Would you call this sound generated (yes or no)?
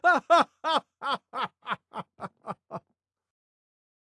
no